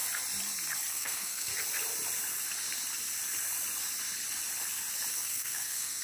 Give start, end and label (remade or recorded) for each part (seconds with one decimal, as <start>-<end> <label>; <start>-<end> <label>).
0.0-0.9 recorded; 0.9-1.5 remade; 1.5-5.1 recorded; 5.1-6.0 remade